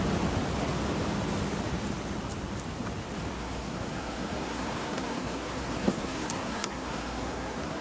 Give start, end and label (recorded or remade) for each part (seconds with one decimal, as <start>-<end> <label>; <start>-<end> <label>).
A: 0.0-3.4 recorded; 3.4-7.8 remade

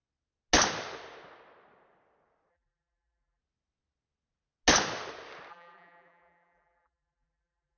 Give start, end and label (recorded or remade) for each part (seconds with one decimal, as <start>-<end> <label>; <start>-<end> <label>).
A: 0.0-2.5 recorded; 2.5-3.4 remade; 3.4-5.5 recorded; 5.5-7.8 remade

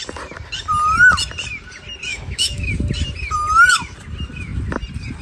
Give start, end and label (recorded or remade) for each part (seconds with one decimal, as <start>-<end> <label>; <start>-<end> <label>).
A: 0.0-2.1 recorded; 2.1-2.7 remade; 2.7-5.2 recorded